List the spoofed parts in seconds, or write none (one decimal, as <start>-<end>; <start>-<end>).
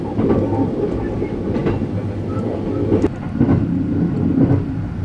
none